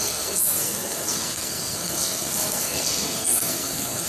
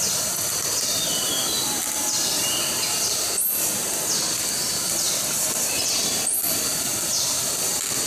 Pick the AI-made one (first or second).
first